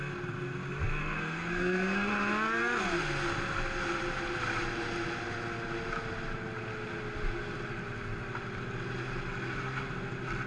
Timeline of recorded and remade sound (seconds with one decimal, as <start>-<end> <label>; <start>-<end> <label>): 0.0-1.0 recorded; 1.0-2.1 remade; 2.1-10.5 recorded